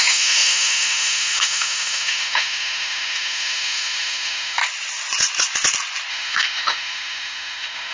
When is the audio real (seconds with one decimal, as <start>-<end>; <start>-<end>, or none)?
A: 4.6-6.1